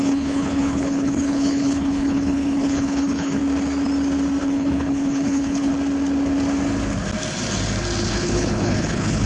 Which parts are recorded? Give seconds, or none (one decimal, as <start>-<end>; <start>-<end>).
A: 3.4-4.4; 5.7-8.1